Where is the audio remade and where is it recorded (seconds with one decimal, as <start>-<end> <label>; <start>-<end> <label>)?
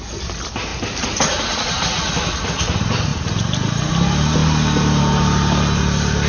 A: 0.0-6.3 recorded